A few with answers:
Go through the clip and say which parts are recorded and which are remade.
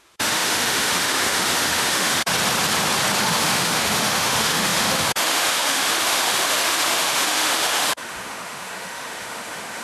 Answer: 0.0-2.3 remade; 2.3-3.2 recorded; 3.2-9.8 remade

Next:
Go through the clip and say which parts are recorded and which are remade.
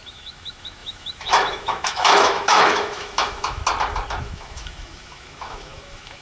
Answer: 0.0-3.6 remade; 3.6-4.2 recorded; 4.2-6.2 remade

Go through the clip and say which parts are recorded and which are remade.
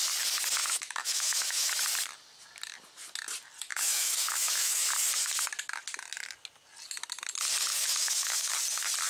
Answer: 0.0-0.6 recorded; 0.6-1.7 remade; 1.7-3.7 recorded; 3.7-4.9 remade; 4.9-7.7 recorded; 7.7-8.5 remade; 8.5-9.1 recorded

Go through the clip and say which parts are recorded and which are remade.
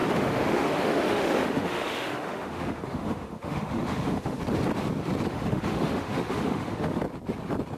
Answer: 0.0-4.4 remade; 4.4-5.3 recorded; 5.3-7.0 remade; 7.0-7.8 recorded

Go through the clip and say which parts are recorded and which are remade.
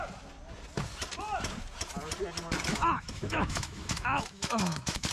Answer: 0.0-2.7 recorded; 2.7-5.1 remade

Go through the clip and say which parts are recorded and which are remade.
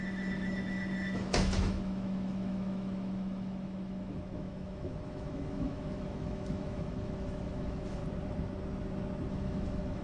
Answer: 0.0-8.0 remade; 8.0-9.3 recorded; 9.3-10.0 remade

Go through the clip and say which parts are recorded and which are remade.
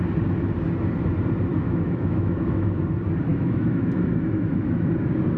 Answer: 0.0-1.5 recorded; 1.5-2.8 remade; 2.8-3.3 recorded; 3.3-4.9 remade; 4.9-5.4 recorded